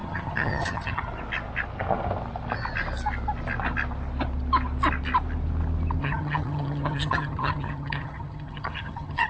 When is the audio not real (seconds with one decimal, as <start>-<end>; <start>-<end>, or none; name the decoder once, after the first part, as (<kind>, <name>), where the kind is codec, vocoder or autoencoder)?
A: 0.0-1.1 (vocoder, HiFi-GAN); 6.0-9.3